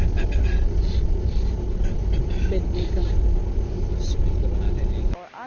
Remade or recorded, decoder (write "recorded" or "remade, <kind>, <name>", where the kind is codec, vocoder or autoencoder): recorded